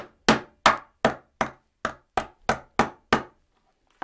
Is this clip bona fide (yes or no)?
yes